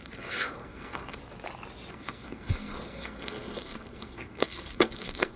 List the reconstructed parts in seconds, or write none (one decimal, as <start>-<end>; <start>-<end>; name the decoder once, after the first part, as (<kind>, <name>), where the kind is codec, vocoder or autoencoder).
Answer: 0.0-1.2 (codec, SNAC); 1.9-5.4